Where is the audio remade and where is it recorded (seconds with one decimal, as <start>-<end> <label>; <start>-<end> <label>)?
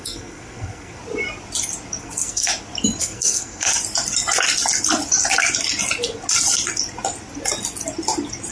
0.0-1.0 remade; 1.0-2.0 recorded; 2.0-2.5 remade; 2.5-3.0 recorded; 3.0-3.7 remade; 3.7-8.5 recorded